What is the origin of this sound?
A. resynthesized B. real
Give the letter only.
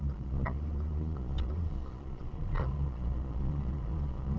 A